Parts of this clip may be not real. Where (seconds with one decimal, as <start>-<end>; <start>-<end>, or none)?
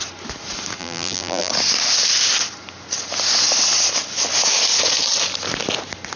0.8-1.5